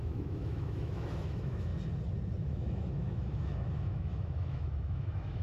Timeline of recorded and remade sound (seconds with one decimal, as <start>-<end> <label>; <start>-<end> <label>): 0.0-1.7 remade; 1.7-2.4 recorded; 2.4-5.4 remade